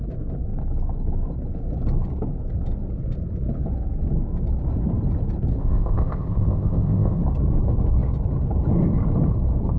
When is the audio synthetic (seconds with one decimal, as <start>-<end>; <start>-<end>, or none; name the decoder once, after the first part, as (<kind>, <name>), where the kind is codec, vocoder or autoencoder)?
5.5-7.2 (codec, ZipCodec)